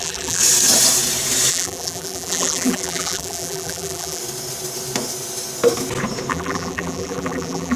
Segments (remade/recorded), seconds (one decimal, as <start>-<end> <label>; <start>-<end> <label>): 0.0-0.4 remade; 0.4-1.5 recorded; 1.5-4.2 remade; 4.2-6.3 recorded; 6.3-7.8 remade